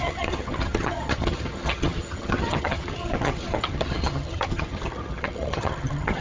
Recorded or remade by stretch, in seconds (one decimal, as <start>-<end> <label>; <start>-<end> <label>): 0.0-6.2 remade